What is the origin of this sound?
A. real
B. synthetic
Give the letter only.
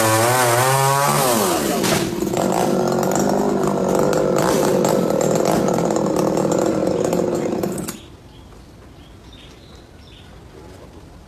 A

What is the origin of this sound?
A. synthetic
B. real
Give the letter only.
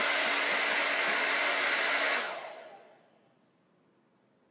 B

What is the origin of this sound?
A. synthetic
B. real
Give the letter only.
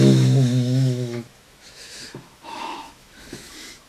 A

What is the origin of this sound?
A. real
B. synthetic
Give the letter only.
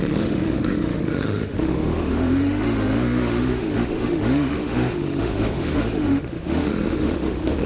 B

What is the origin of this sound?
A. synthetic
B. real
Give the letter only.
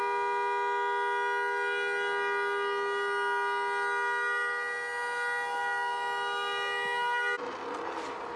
B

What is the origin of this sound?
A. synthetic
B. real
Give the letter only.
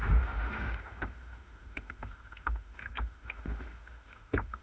A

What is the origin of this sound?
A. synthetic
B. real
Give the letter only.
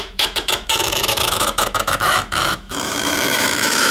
A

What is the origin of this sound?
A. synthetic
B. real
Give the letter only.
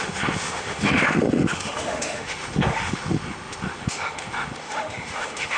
A